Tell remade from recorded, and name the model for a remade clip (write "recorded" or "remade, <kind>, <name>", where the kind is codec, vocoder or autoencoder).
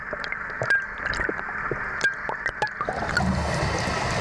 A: recorded